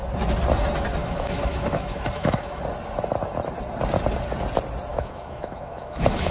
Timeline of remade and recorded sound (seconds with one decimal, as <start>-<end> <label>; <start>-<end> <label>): 0.0-1.0 recorded; 1.0-2.6 remade; 2.6-4.9 recorded; 4.9-6.3 remade